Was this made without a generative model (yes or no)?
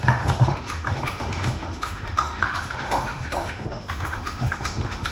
no